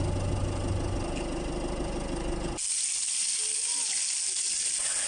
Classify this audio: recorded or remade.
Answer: recorded